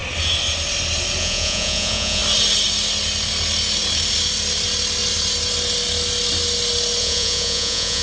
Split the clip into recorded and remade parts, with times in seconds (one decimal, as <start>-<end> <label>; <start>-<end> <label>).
0.0-1.2 recorded; 1.2-2.2 remade; 2.2-7.0 recorded; 7.0-8.0 remade